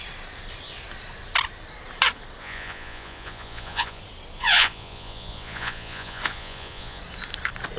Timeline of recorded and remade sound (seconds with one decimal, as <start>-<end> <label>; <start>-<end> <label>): 0.0-2.4 recorded; 2.4-4.0 remade; 4.0-4.4 recorded; 4.4-7.0 remade; 7.0-7.8 recorded